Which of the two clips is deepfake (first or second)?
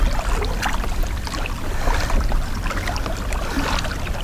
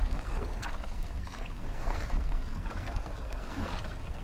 second